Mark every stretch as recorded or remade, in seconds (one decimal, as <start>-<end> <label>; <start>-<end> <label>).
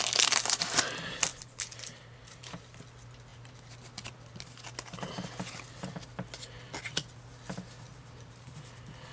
0.0-1.3 recorded; 1.3-2.8 remade; 2.8-7.9 recorded; 7.9-9.1 remade